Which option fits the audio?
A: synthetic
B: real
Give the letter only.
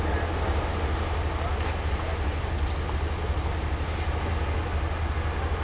B